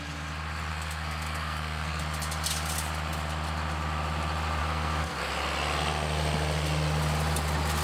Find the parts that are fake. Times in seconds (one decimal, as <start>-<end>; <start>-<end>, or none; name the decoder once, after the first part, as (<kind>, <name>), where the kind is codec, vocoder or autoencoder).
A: 0.7-2.0 (codec, SNAC); 4.6-5.3